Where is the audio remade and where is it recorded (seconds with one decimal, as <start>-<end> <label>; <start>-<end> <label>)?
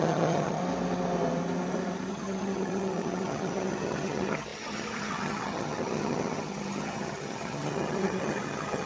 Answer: 0.0-0.6 remade; 0.6-2.1 recorded; 2.1-8.9 remade